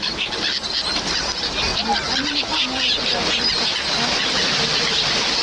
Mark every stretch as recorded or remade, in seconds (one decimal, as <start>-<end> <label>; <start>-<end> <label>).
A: 0.0-5.4 recorded